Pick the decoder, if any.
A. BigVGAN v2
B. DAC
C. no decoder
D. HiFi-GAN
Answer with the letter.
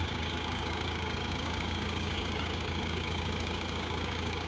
B